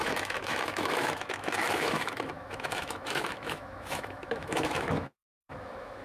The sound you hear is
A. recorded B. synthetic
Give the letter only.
B